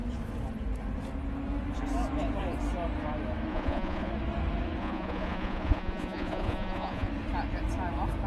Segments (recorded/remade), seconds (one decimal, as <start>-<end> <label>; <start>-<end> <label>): 0.0-3.5 recorded; 3.5-4.1 remade; 4.1-4.8 recorded; 4.8-7.1 remade; 7.1-8.3 recorded